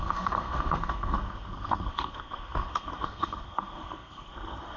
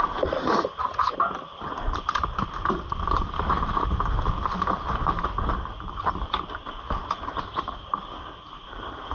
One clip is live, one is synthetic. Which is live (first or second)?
second